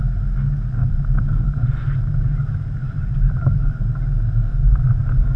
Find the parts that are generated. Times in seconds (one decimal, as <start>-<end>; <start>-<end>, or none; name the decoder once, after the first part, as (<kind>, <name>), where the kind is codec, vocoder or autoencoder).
0.8-3.8 (vocoder, BigVGAN v2); 4.5-5.4